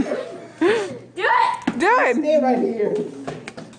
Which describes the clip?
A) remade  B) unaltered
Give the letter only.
B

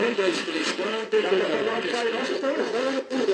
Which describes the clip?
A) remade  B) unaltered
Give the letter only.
A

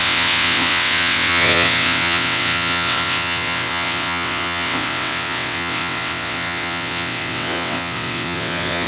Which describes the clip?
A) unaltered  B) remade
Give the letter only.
B